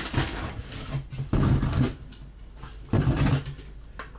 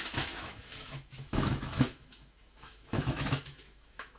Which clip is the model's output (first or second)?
second